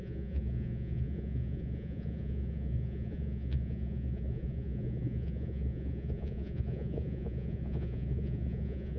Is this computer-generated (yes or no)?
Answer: yes